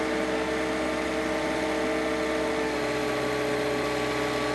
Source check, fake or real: real